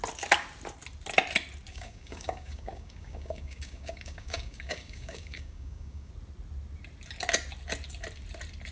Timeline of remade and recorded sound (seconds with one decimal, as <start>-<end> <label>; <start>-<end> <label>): 0.0-1.7 recorded; 1.7-6.1 remade; 6.1-8.7 recorded